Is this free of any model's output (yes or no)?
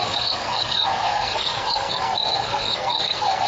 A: no